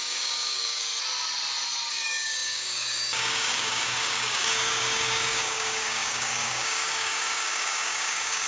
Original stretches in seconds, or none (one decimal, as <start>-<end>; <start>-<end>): 0.9-1.9